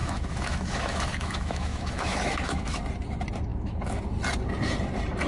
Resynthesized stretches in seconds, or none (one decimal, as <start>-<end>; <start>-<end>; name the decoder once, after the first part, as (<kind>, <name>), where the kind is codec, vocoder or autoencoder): 0.0-2.8 (autoencoder, DAC-VAE); 3.5-4.0